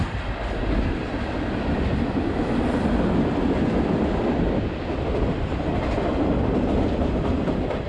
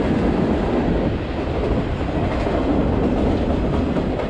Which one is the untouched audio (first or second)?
second